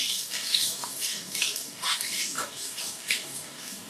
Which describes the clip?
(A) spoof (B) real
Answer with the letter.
A